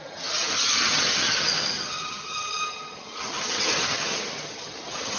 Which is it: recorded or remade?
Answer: remade